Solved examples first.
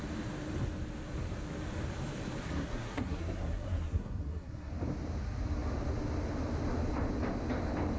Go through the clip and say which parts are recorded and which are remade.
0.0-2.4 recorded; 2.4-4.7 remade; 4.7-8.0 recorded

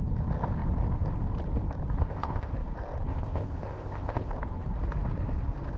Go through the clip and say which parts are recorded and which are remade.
0.0-2.0 recorded; 2.0-2.5 remade; 2.5-3.1 recorded; 3.1-4.3 remade; 4.3-5.8 recorded

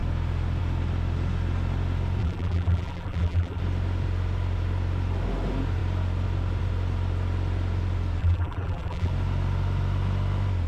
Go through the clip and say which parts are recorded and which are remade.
0.0-2.2 recorded; 2.2-3.6 remade; 3.6-8.2 recorded; 8.2-9.1 remade; 9.1-10.7 recorded

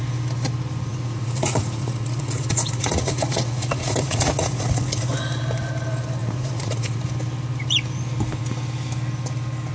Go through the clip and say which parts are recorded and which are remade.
0.0-0.9 recorded; 0.9-5.1 remade; 5.1-6.2 recorded; 6.2-7.0 remade; 7.0-9.7 recorded